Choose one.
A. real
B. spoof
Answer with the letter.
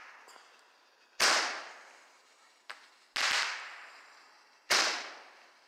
A